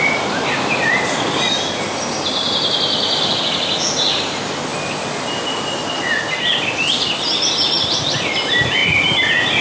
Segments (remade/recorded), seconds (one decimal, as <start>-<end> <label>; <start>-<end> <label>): 0.0-9.6 recorded